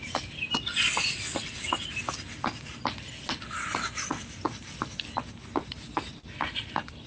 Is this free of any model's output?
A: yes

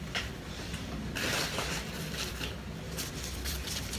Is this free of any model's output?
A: no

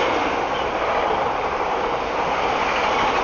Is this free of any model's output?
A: no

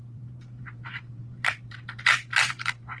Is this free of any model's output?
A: no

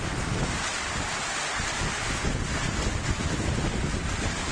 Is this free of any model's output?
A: yes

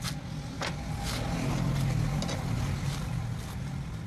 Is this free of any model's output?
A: yes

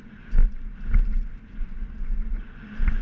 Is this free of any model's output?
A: yes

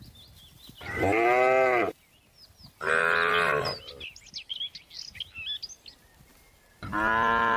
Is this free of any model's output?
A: yes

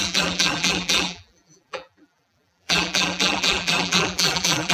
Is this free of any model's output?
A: no